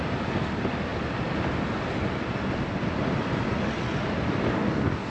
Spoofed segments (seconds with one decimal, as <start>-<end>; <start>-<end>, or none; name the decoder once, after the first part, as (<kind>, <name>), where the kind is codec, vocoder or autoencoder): 4.5-5.1 (codec, DAC)